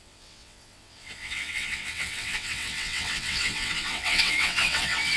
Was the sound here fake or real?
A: fake